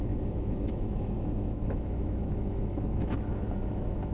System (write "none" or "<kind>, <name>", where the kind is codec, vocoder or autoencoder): autoencoder, DAC-VAE